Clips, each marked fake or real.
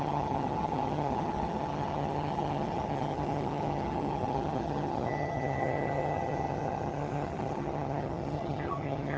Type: fake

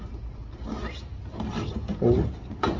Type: real